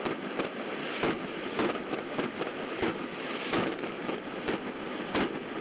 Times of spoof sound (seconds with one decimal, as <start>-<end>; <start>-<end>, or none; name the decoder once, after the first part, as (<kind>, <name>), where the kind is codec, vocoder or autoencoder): 0.8-4.2 (autoencoder, DAC-VAE)